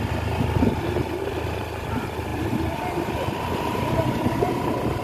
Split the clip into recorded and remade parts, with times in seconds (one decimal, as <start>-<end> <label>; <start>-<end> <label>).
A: 0.0-5.0 remade